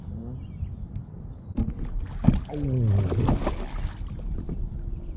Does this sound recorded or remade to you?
recorded